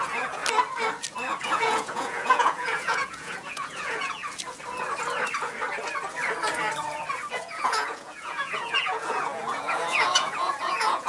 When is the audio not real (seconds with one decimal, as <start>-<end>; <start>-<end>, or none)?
0.0-0.4; 1.4-4.2; 7.3-11.1